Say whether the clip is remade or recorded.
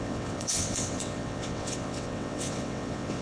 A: remade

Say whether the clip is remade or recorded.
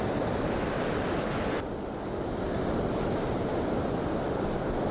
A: recorded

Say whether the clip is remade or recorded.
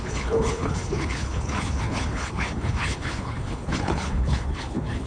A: remade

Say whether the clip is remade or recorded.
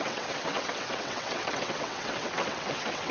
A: remade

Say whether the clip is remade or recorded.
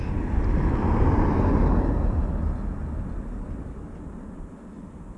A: recorded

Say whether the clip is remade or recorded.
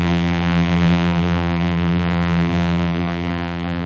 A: remade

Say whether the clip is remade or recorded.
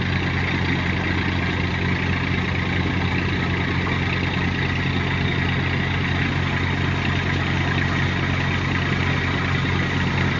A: recorded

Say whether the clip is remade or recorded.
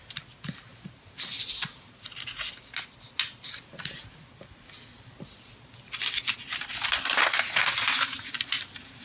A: recorded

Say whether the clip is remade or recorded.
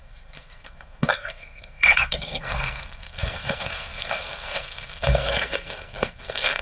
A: remade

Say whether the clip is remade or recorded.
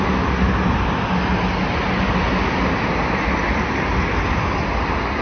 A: recorded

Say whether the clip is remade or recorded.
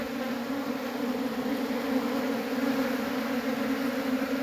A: recorded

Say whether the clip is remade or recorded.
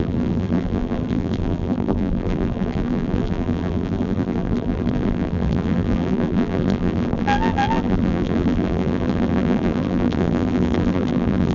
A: remade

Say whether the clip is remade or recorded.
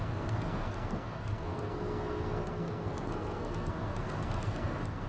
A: remade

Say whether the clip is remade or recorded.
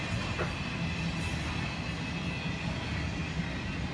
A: recorded